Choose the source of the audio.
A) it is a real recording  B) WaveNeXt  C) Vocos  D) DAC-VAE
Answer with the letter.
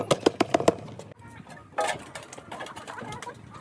A